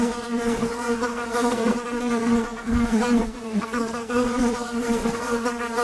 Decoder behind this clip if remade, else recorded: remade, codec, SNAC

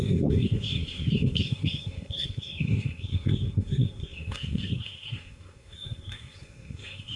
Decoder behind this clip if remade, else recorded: remade, codec, SNAC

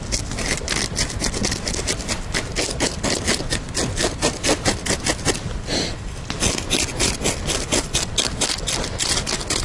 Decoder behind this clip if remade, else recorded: recorded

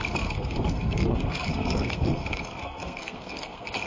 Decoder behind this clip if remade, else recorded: remade, codec, SNAC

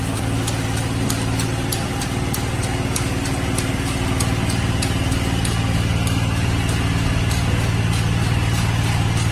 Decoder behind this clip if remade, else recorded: recorded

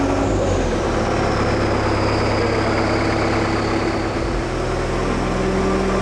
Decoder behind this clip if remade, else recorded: recorded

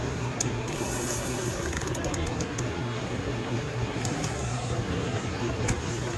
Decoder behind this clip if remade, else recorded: remade, codec, SNAC